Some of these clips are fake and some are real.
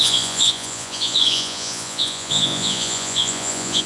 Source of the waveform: fake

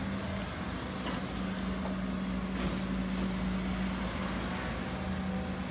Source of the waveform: real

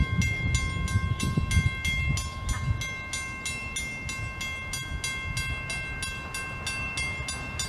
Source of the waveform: real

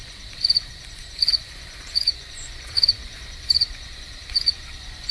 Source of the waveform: fake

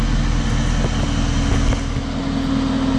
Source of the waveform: real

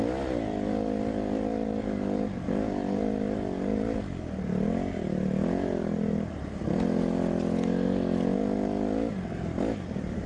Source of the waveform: real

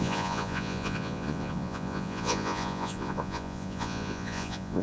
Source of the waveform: fake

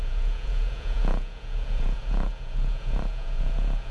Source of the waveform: fake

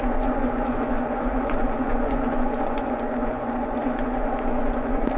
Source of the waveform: fake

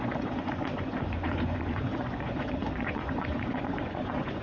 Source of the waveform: fake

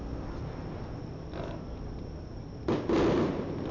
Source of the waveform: real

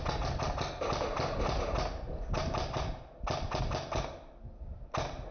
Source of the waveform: real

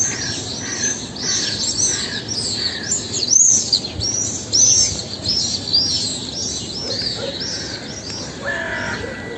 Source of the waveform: real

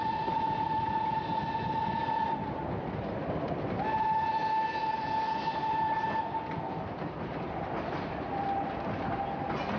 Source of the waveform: real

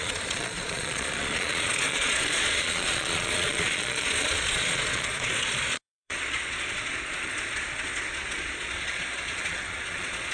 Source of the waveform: fake